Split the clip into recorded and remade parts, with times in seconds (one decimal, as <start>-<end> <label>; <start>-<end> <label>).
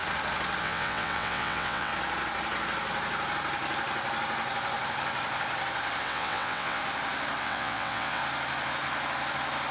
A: 0.0-0.6 recorded; 0.6-1.9 remade; 1.9-6.0 recorded; 6.0-6.8 remade; 6.8-7.4 recorded; 7.4-8.2 remade; 8.2-9.7 recorded